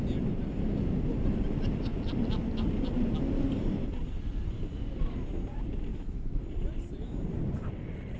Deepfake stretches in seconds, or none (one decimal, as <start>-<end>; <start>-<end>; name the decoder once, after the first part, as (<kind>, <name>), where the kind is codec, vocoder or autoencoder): 5.9-6.4 (autoencoder, DAC-VAE)